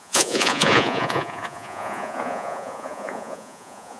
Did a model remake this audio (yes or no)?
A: yes